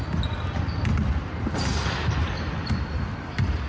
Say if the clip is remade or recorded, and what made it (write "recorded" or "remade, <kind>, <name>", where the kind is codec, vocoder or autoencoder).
recorded